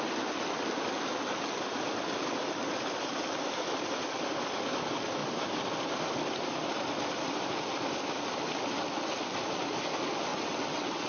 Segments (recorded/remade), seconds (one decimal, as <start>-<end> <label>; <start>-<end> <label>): 0.0-10.3 recorded; 10.3-11.1 remade